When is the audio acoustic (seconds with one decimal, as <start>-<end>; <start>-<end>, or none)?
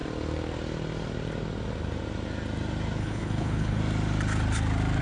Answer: 0.0-3.0; 3.8-5.0